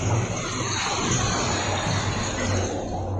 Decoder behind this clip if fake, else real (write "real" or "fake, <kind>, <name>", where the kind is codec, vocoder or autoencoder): real